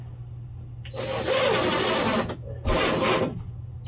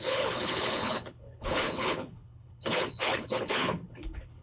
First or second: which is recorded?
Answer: first